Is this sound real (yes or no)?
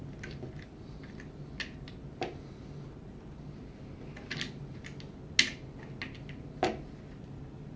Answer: yes